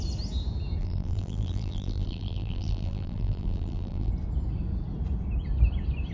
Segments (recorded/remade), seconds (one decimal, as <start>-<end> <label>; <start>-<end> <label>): 0.0-0.8 recorded; 0.8-4.1 remade; 4.1-6.1 recorded